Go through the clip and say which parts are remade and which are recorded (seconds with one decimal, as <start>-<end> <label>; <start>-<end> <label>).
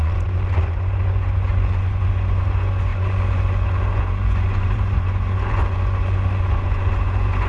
0.0-7.5 remade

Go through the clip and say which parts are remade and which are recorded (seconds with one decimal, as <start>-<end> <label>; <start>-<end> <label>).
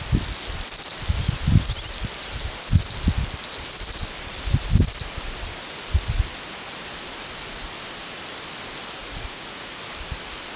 0.0-9.0 recorded; 9.0-9.8 remade; 9.8-10.6 recorded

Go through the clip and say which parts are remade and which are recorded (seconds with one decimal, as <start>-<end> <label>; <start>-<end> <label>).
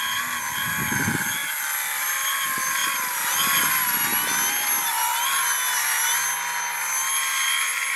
0.0-8.0 recorded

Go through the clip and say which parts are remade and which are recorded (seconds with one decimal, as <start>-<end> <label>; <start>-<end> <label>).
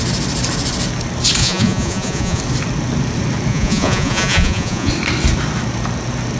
0.0-1.4 recorded; 1.4-2.4 remade; 2.4-3.5 recorded; 3.5-4.9 remade; 4.9-6.4 recorded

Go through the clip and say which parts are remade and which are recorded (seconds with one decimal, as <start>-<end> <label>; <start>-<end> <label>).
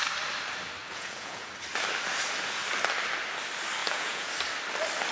0.0-0.8 recorded; 0.8-1.5 remade; 1.5-3.8 recorded; 3.8-4.3 remade; 4.3-5.1 recorded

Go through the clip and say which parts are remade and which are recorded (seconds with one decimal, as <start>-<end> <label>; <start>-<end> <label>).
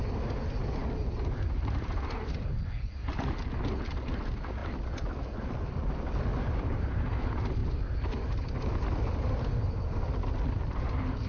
0.0-11.3 recorded